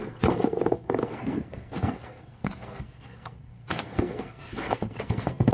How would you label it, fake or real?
fake